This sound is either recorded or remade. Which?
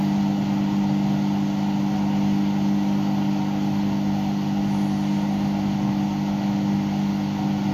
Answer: recorded